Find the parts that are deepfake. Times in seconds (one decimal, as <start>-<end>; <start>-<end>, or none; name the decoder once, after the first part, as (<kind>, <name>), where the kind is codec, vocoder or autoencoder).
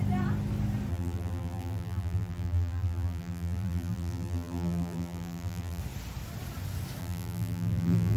0.9-5.8 (vocoder, BigVGAN v2); 7.0-8.2